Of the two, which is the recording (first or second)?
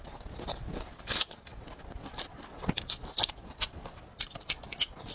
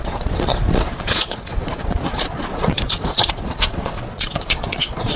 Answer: first